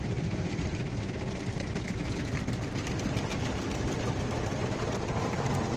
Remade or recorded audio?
recorded